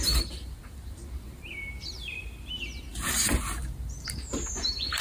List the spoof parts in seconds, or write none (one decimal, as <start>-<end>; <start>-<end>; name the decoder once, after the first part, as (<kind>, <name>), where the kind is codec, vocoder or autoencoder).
0.0-5.0 (vocoder, BigVGAN v2)